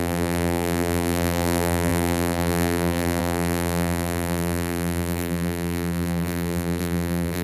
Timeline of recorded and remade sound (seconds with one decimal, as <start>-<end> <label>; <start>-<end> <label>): 0.0-7.4 remade